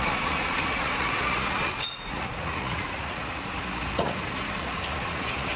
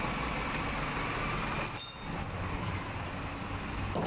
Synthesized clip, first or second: first